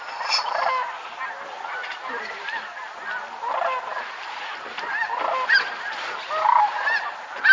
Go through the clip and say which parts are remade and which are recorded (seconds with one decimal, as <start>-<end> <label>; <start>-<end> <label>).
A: 0.0-7.5 recorded